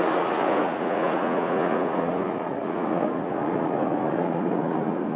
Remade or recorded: remade